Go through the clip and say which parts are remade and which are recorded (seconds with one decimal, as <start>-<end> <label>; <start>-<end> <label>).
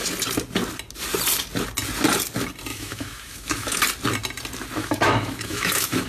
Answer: 0.0-2.7 recorded; 2.7-3.8 remade; 3.8-4.8 recorded; 4.8-6.1 remade